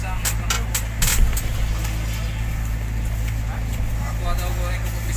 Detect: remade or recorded recorded